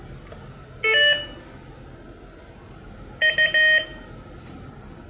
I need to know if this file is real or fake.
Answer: real